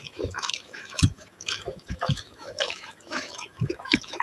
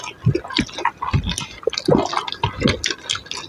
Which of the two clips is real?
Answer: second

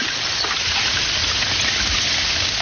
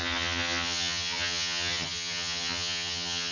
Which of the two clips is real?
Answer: first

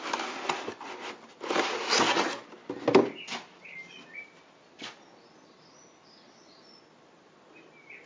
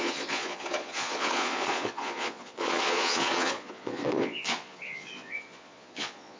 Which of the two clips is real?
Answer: first